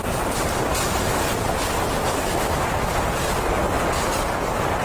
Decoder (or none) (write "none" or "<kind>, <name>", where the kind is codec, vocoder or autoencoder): none